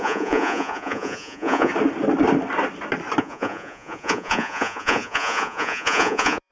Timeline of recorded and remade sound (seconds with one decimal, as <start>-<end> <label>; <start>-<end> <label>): 0.0-1.7 remade; 1.7-3.2 recorded; 3.2-6.5 remade